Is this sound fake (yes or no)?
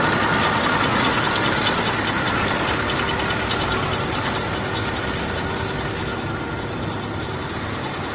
no